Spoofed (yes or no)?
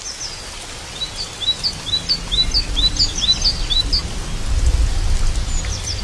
no